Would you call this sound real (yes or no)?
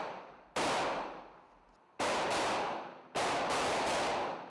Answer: yes